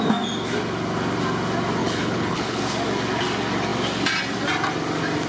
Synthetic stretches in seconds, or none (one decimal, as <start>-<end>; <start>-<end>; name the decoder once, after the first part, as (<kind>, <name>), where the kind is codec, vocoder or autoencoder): 1.8-2.6 (codec, HILCodec)